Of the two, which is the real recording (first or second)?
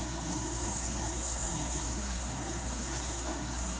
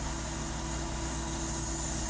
second